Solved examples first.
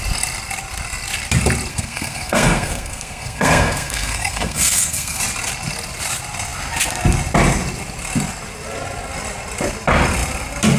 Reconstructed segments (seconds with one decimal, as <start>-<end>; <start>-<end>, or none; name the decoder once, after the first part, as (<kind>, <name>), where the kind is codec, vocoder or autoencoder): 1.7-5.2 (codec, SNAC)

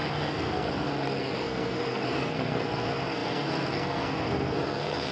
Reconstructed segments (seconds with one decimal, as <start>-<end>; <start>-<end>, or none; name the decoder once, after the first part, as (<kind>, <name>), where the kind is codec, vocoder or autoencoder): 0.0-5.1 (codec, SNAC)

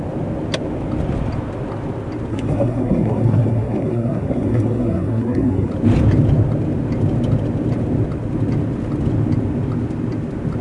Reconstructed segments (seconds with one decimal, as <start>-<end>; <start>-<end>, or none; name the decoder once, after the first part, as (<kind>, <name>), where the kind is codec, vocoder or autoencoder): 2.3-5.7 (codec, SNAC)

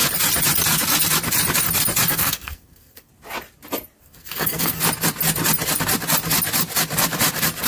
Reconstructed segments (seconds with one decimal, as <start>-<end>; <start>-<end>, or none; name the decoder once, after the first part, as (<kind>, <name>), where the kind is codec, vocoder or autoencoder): 2.1-3.1 (codec, SNAC); 4.0-4.8